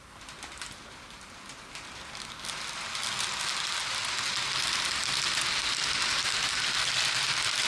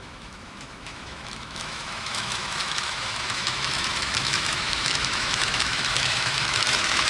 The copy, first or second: second